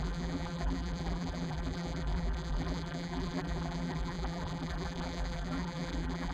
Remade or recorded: remade